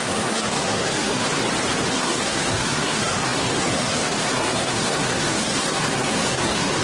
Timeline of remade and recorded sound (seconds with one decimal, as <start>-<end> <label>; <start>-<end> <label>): 0.0-1.4 remade; 1.4-1.9 recorded; 1.9-6.8 remade